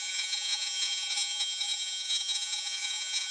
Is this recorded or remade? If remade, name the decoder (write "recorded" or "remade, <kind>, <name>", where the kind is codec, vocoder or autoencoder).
remade, vocoder, Vocos